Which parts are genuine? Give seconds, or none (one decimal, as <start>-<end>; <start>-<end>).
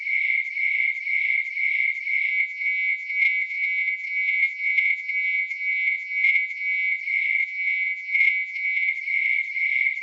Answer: 0.0-2.3; 7.0-7.4; 8.9-10.0